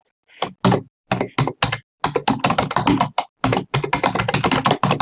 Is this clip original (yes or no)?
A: yes